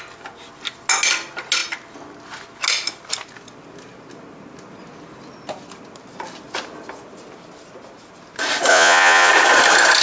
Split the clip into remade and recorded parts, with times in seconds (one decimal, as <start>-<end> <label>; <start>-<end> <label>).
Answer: 0.0-8.7 recorded; 8.7-9.3 remade; 9.3-10.0 recorded